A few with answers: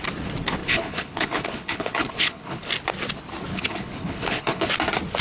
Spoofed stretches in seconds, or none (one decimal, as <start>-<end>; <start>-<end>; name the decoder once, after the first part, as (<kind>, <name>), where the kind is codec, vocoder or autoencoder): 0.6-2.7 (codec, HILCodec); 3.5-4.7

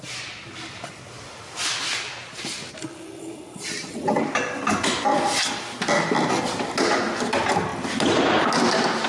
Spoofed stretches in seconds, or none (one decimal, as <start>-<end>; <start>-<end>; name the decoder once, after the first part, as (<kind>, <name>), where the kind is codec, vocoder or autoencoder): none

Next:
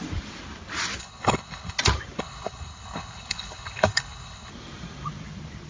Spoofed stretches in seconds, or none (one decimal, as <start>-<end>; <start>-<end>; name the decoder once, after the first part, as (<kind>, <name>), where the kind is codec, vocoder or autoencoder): 1.0-1.8 (codec, HILCodec); 2.2-4.5